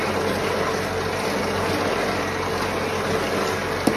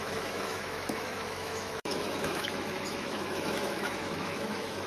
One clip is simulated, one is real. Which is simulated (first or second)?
second